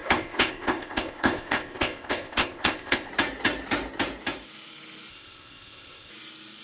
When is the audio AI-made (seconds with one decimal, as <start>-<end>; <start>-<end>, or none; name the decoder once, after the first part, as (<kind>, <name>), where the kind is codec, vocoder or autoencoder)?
0.0-3.1 (codec, ZipCodec); 5.1-6.1

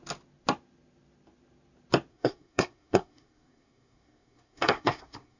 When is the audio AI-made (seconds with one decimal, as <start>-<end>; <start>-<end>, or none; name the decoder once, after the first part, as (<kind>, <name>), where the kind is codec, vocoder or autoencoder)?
2.1-5.4 (codec, SNAC)